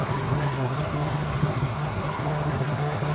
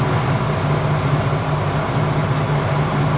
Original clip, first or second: second